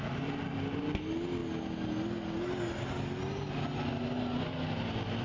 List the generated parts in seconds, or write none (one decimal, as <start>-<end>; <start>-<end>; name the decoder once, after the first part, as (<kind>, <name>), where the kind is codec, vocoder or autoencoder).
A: none